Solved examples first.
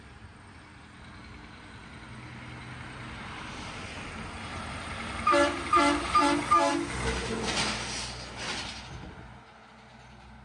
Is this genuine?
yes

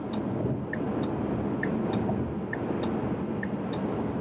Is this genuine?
yes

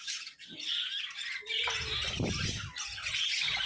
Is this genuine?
yes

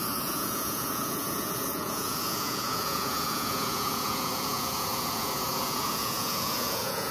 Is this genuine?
no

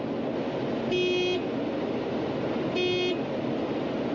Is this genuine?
yes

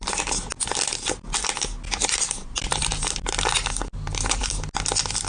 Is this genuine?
yes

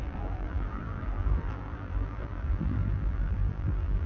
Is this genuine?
no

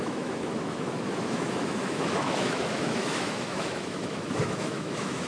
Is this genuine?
no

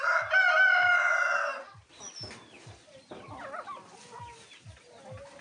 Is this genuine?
yes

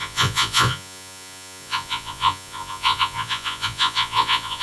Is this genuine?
no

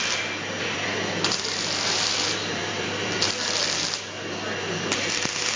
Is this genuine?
no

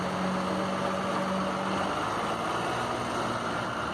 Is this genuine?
yes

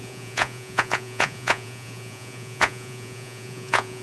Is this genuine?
no